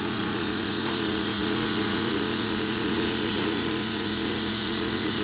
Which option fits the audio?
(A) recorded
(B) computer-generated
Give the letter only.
B